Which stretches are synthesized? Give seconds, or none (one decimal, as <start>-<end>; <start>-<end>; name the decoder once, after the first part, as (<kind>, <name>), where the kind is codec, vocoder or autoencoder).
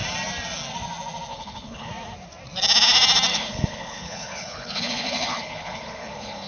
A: 1.3-1.9 (codec, HILCodec); 3.3-6.5